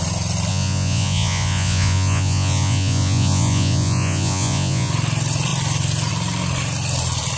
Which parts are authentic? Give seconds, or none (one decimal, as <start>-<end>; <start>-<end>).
0.0-0.5; 4.9-7.4